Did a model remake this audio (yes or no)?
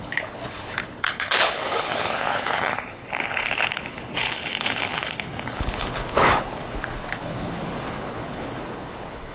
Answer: yes